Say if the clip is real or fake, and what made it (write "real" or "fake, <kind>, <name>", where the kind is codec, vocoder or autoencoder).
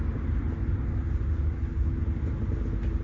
real